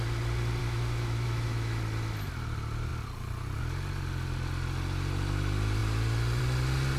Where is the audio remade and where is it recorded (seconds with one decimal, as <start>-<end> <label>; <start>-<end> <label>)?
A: 0.0-0.6 recorded; 0.6-1.8 remade; 1.8-7.0 recorded